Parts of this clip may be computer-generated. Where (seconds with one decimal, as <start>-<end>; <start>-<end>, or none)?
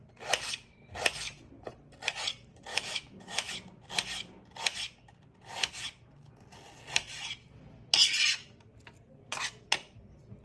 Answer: 2.7-3.5